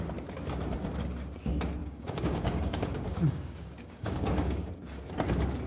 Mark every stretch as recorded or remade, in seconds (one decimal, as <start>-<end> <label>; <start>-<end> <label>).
0.0-1.8 recorded; 1.8-4.7 remade; 4.7-5.7 recorded